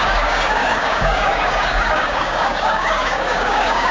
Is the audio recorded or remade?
remade